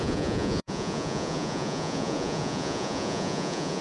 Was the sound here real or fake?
fake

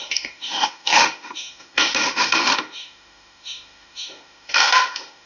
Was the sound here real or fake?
fake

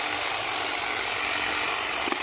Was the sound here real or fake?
real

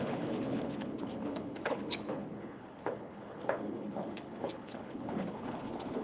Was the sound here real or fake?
fake